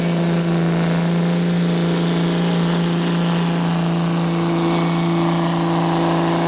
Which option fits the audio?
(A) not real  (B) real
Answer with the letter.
B